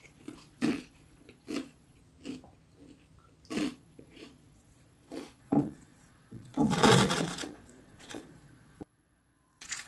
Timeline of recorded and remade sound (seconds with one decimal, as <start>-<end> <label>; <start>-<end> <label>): 0.0-2.0 remade; 2.0-3.5 recorded; 3.5-9.9 remade